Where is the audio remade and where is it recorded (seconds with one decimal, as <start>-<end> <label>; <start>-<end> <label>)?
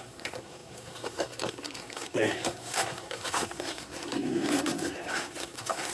0.0-5.9 remade